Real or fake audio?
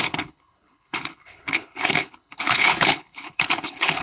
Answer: fake